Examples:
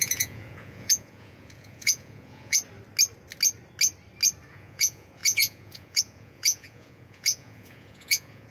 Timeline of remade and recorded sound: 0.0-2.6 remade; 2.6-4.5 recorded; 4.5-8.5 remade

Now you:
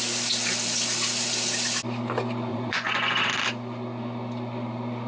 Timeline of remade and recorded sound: 0.0-2.5 recorded; 2.5-3.3 remade; 3.3-5.1 recorded

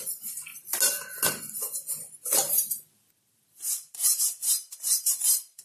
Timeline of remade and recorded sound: 0.0-0.5 remade; 0.5-1.6 recorded; 1.6-5.6 remade

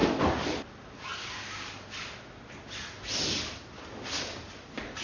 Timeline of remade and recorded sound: 0.0-5.0 recorded